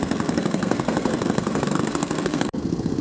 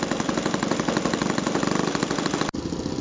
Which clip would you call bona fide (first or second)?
second